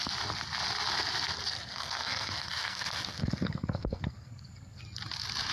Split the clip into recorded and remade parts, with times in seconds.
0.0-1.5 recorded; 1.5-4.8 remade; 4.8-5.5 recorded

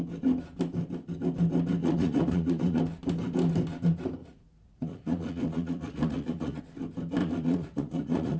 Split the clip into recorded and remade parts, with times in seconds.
0.0-1.8 recorded; 1.8-2.8 remade; 2.8-4.2 recorded; 4.2-6.6 remade; 6.6-7.2 recorded; 7.2-8.4 remade

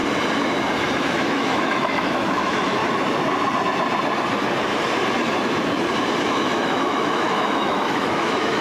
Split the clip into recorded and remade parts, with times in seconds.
0.0-1.0 recorded; 1.0-2.8 remade; 2.8-6.2 recorded; 6.2-8.6 remade

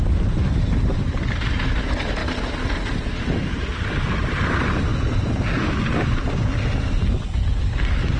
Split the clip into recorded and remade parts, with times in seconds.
0.0-8.2 recorded

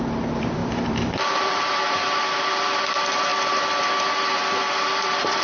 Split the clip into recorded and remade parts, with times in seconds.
0.0-3.3 remade; 3.3-4.3 recorded; 4.3-5.4 remade

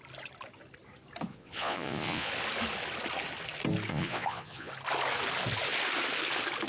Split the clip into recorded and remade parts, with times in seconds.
0.0-1.3 recorded; 1.3-2.3 remade; 2.3-3.9 recorded; 3.9-4.7 remade; 4.7-6.7 recorded

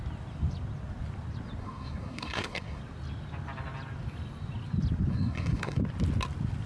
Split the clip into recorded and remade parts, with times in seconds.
0.0-1.6 recorded; 1.6-2.8 remade; 2.8-5.1 recorded; 5.1-5.8 remade; 5.8-6.7 recorded

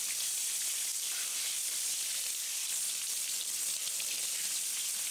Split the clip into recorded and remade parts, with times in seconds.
0.0-0.9 recorded; 0.9-3.6 remade; 3.6-5.1 recorded